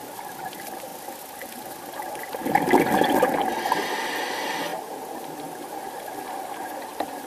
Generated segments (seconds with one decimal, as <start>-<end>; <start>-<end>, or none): none